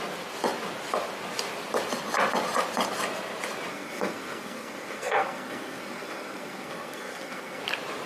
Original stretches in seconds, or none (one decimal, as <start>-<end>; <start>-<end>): 0.0-3.7; 7.6-8.1